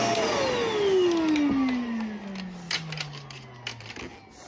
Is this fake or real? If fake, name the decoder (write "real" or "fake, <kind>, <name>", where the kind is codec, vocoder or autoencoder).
real